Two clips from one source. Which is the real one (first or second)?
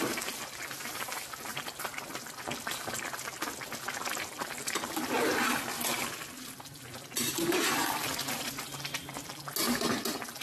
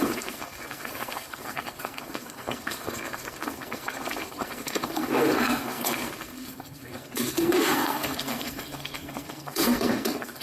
first